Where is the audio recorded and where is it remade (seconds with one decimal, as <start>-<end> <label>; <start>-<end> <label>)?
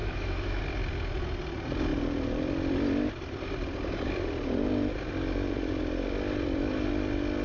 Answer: 0.0-0.6 remade; 0.6-7.4 recorded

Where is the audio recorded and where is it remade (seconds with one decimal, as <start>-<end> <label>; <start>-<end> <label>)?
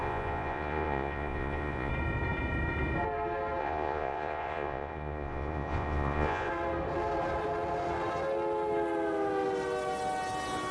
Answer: 0.0-1.9 remade; 1.9-3.6 recorded; 3.6-6.5 remade; 6.5-10.7 recorded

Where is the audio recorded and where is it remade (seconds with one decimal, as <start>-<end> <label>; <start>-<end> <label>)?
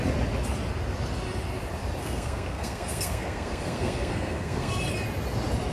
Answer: 0.0-2.0 recorded; 2.0-4.7 remade; 4.7-5.7 recorded